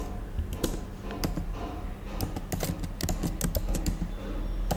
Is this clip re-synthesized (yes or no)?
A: no